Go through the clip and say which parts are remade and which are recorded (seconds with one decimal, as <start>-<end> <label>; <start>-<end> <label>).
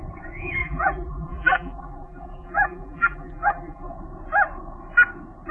0.0-0.6 recorded; 0.6-3.9 remade; 3.9-5.5 recorded